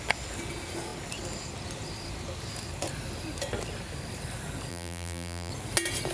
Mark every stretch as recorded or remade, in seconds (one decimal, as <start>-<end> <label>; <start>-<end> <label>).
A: 0.0-4.7 recorded; 4.7-5.5 remade; 5.5-6.1 recorded